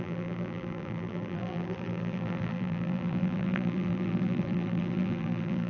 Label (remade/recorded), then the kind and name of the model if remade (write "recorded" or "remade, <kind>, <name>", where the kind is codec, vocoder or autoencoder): remade, vocoder, BigVGAN v2